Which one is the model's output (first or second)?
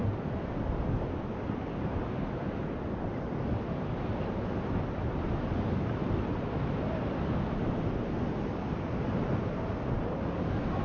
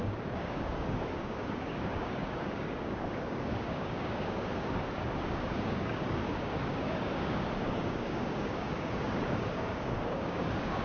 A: second